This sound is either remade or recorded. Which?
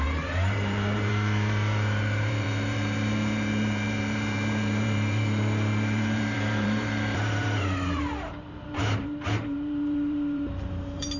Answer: remade